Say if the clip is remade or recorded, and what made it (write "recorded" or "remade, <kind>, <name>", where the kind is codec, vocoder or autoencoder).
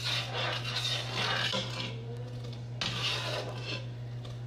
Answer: recorded